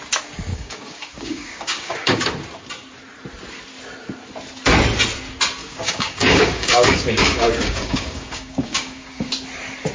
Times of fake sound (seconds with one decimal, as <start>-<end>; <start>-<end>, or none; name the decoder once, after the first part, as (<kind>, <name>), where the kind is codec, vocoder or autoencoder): 0.5-2.3 (codec, DAC); 5.6-9.3